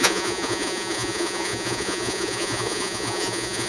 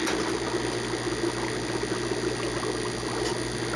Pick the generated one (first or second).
first